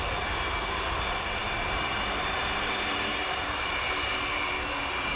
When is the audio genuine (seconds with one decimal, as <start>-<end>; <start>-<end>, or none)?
0.0-1.4; 4.5-5.2